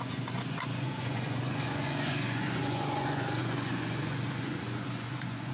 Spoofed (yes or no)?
yes